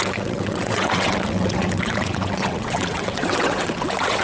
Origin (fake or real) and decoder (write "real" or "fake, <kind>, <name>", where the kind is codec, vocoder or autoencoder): fake, vocoder, WaveNeXt